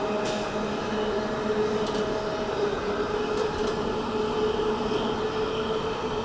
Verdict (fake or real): real